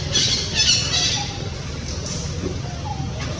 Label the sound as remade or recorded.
recorded